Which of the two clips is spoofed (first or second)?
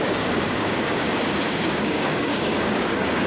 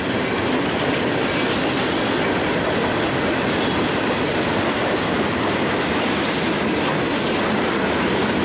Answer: first